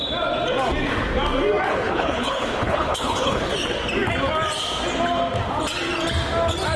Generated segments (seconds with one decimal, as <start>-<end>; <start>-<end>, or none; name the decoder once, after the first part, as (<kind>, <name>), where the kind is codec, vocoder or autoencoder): 1.7-3.4 (codec, HILCodec)